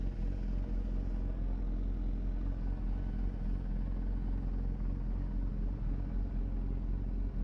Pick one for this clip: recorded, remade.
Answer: recorded